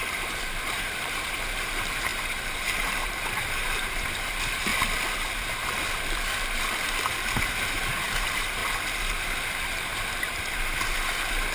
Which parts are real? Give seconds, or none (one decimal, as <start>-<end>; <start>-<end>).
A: 4.7-5.5; 8.6-9.1; 9.9-10.5